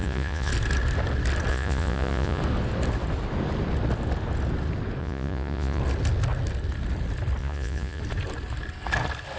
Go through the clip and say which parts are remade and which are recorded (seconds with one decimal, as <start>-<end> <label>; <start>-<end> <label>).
0.0-0.5 remade; 0.5-1.5 recorded; 1.5-2.4 remade; 2.4-5.0 recorded; 5.0-5.8 remade; 5.8-7.4 recorded; 7.4-8.0 remade; 8.0-9.4 recorded